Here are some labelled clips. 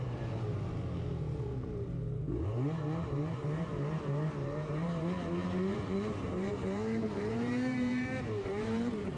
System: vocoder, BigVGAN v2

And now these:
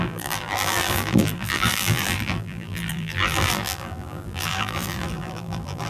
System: vocoder, BigVGAN v2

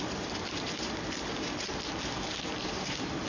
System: vocoder, BigVGAN v2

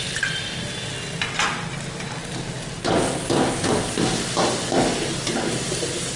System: none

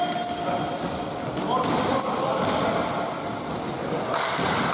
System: none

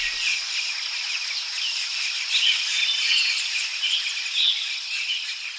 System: none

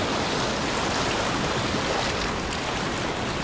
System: none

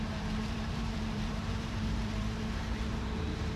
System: vocoder, BigVGAN v2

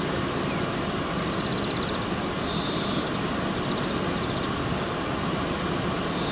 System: vocoder, BigVGAN v2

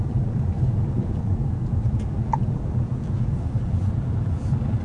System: vocoder, BigVGAN v2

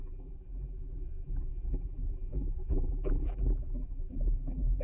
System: vocoder, BigVGAN v2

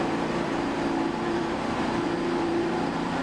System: vocoder, BigVGAN v2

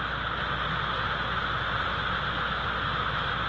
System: none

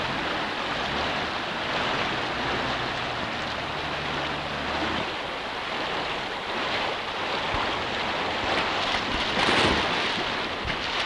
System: none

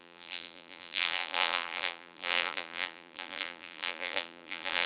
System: vocoder, BigVGAN v2